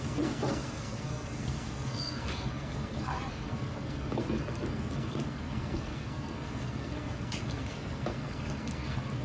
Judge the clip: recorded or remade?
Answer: remade